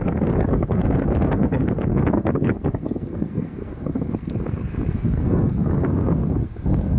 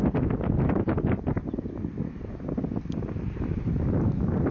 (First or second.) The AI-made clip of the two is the first